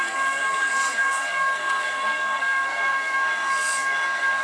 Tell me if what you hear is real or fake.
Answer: fake